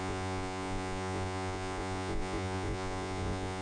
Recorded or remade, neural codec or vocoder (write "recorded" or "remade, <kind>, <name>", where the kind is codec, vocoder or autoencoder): remade, vocoder, Vocos